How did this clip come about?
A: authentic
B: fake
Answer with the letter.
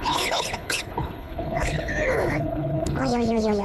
B